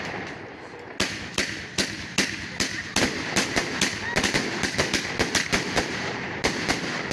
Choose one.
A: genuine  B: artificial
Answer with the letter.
A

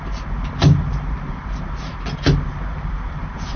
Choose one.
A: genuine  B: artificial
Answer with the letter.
A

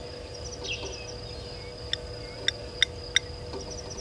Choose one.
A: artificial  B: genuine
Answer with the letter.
B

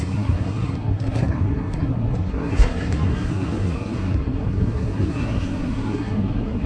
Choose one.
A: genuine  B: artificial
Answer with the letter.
B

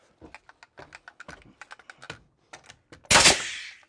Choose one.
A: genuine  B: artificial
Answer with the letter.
A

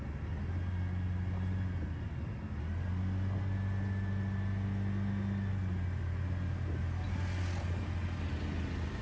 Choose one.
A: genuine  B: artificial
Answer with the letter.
A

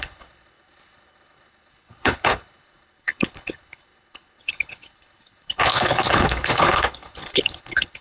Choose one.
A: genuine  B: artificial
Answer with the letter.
B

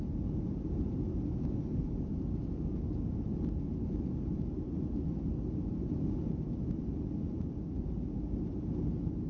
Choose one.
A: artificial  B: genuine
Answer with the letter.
B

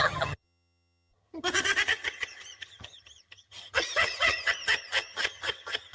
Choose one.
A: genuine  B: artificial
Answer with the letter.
B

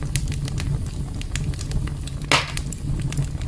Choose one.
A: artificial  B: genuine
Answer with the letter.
B